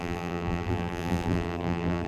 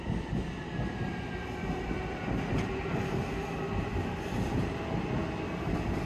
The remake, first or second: first